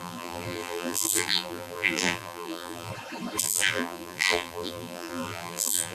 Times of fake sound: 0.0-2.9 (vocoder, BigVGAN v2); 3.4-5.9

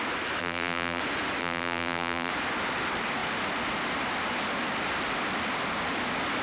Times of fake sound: 0.4-1.0 (vocoder, BigVGAN v2); 1.4-2.3

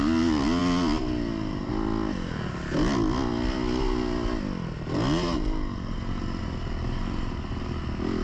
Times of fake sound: none

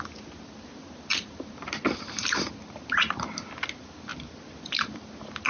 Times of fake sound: none

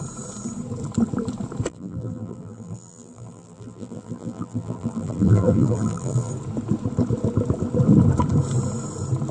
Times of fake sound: 1.7-6.3 (vocoder, BigVGAN v2)